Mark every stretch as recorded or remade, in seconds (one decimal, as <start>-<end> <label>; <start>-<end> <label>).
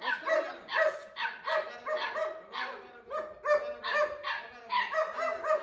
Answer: 0.0-5.6 recorded